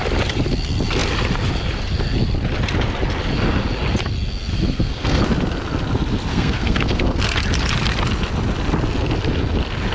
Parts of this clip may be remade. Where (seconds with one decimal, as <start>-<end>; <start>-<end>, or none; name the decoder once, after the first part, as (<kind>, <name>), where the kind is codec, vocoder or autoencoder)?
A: 4.5-5.2 (codec, SNAC); 6.3-7.2